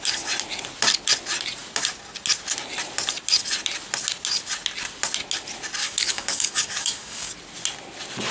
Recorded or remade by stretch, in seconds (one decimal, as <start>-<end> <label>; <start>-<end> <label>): 0.0-5.8 recorded; 5.8-7.3 remade; 7.3-8.3 recorded